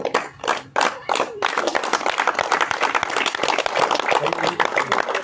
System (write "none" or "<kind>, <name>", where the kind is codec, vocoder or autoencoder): none